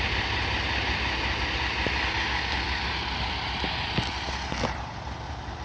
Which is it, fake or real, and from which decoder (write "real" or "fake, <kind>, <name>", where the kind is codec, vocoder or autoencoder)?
real